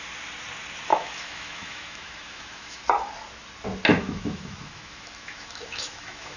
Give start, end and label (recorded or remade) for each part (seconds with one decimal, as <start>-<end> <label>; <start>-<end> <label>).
0.0-0.9 recorded; 0.9-2.8 remade; 2.8-3.9 recorded; 3.9-6.4 remade